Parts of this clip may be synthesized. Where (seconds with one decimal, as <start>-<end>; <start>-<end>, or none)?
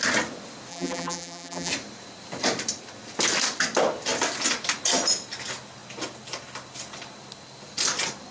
0.7-1.7